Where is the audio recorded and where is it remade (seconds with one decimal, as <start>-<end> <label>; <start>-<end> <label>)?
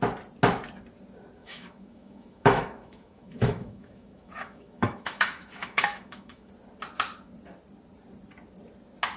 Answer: 0.0-1.4 recorded; 1.4-6.5 remade; 6.5-9.2 recorded